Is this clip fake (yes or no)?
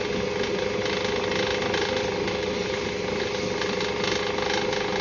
no